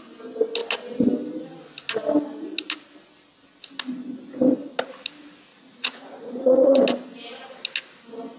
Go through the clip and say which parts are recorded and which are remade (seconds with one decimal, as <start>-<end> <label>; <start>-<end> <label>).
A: 0.0-5.5 recorded; 5.5-6.8 remade; 6.8-8.4 recorded